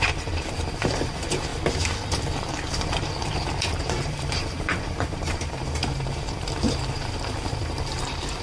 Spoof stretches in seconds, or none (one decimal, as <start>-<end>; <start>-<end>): 0.0-1.5; 2.5-8.4